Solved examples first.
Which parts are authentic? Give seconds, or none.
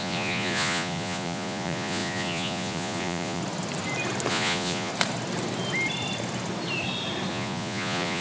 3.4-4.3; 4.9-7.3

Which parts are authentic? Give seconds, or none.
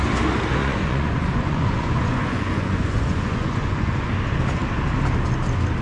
0.0-0.6; 4.1-5.8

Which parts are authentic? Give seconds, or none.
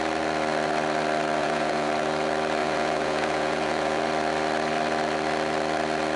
0.0-1.4; 1.9-2.6; 4.0-6.2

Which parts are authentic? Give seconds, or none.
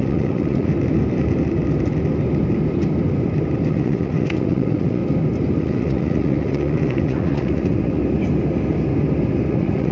0.7-3.7; 5.0-5.6; 8.0-9.5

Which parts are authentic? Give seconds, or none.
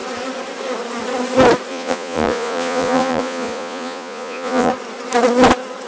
0.0-1.7; 4.7-5.9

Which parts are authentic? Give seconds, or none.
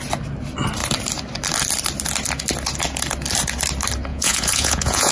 0.0-4.1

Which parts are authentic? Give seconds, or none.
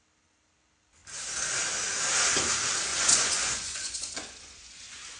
0.0-2.9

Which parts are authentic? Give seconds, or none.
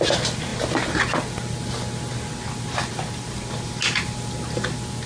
0.0-5.1